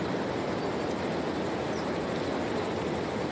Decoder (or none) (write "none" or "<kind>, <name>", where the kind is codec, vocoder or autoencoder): none